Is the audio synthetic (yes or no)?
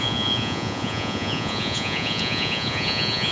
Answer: yes